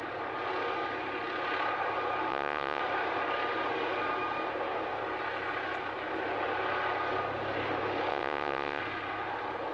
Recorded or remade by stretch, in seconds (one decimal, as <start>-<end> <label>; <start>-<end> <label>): 0.0-2.3 recorded; 2.3-2.8 remade; 2.8-8.1 recorded; 8.1-8.8 remade; 8.8-9.7 recorded